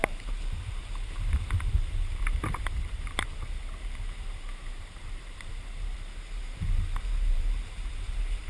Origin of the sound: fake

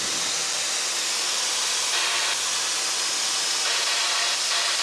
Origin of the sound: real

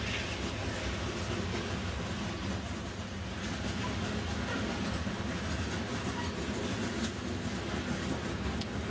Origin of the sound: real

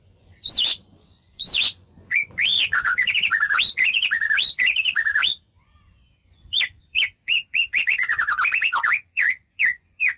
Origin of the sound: fake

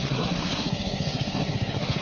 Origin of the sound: fake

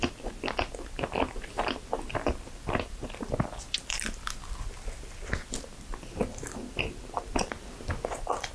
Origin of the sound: real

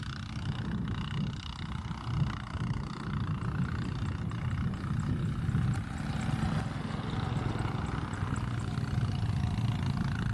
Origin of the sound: real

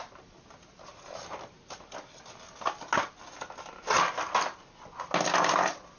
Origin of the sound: real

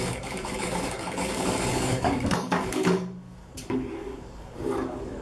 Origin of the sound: fake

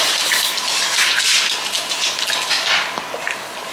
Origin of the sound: real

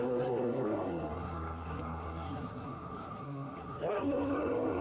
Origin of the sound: fake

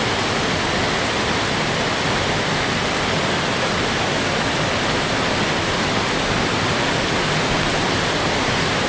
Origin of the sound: real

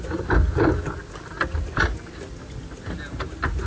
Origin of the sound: real